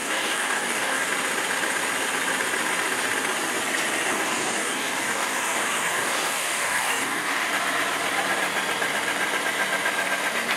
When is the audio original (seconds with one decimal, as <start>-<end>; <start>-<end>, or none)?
1.1-4.1; 7.5-10.6